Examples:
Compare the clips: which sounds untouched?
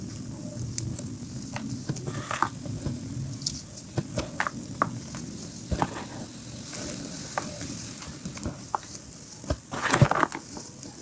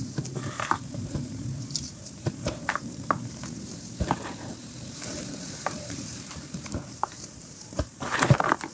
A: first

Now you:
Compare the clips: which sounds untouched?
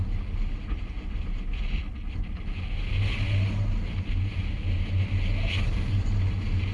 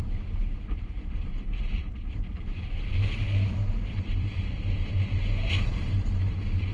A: first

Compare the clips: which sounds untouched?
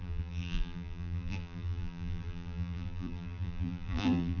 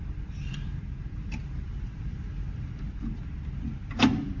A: second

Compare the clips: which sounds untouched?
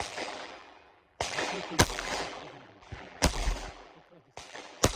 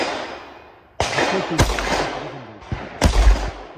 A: second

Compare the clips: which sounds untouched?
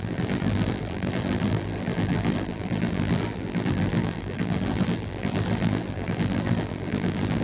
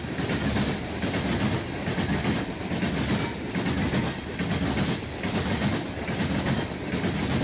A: second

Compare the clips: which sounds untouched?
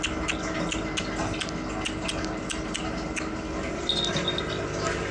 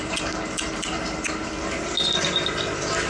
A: first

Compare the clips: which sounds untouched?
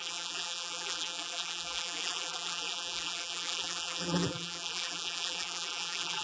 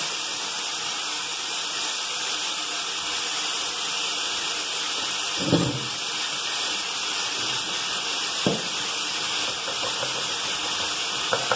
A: second